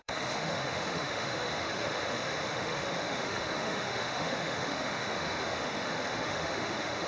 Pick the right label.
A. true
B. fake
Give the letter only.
B